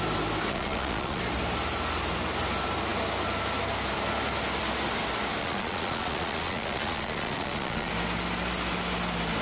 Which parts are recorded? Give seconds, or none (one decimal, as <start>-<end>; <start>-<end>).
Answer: 0.0-0.5; 1.2-5.4; 7.9-9.4